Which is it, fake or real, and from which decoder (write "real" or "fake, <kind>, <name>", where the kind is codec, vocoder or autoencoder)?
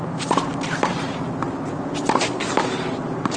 real